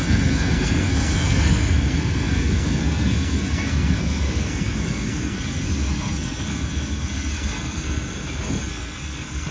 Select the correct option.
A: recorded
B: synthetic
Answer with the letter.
B